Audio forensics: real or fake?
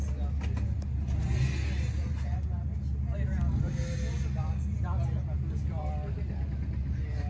real